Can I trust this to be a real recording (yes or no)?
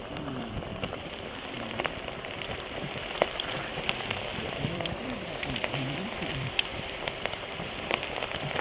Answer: no